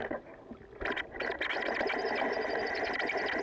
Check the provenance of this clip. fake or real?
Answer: real